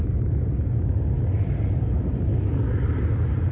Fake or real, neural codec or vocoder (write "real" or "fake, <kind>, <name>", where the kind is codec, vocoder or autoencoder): real